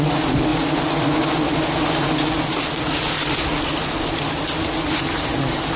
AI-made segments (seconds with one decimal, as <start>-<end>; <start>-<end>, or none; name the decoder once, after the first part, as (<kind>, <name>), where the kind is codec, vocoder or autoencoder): none